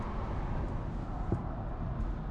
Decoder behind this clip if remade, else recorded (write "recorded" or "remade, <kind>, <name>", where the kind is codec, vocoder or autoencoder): recorded